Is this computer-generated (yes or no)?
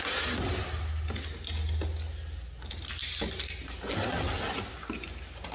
no